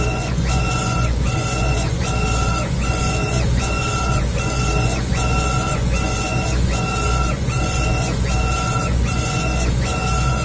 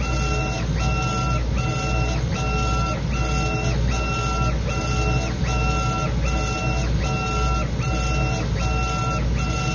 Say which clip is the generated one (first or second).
first